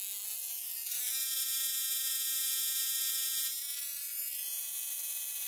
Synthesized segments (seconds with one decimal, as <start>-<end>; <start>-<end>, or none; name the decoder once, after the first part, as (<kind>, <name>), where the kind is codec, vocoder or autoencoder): 0.9-3.5 (vocoder, BigVGAN v2)

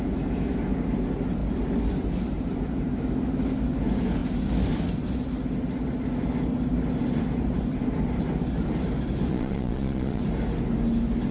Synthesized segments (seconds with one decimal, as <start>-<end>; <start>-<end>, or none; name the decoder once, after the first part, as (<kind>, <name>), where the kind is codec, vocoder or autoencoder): 9.3-10.2 (vocoder, Vocos)

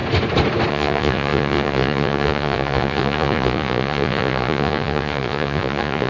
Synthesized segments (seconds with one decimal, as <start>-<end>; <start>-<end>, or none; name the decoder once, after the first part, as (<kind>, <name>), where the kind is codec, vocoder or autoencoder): 0.7-6.1 (vocoder, Vocos)

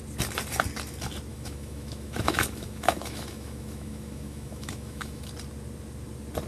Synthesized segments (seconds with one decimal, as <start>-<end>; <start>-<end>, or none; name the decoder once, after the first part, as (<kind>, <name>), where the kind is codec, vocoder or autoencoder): 1.3-5.2 (autoencoder, DAC-VAE)